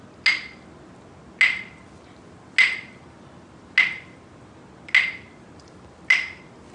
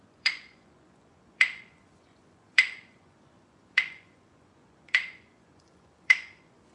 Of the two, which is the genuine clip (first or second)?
first